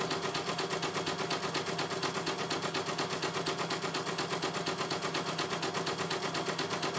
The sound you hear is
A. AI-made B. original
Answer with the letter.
B